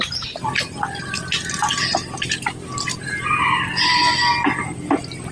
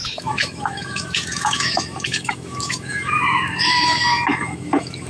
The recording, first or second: first